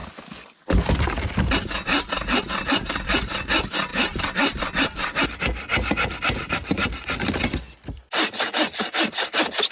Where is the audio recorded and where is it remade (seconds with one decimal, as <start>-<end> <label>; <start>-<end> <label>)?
0.0-2.7 remade; 2.7-9.7 recorded